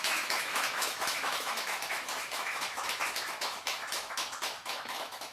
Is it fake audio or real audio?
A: fake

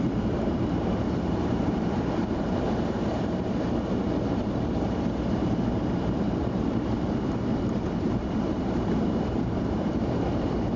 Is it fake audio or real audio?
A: fake